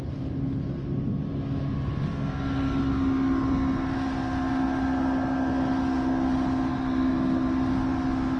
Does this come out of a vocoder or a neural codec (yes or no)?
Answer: no